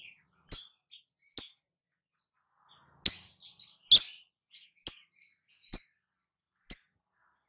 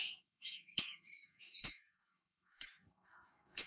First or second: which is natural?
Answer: first